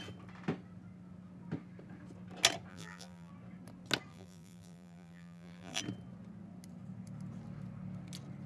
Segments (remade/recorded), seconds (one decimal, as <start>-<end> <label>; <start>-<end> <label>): 0.0-2.7 recorded; 2.7-3.3 remade; 3.3-4.1 recorded; 4.1-5.8 remade; 5.8-8.5 recorded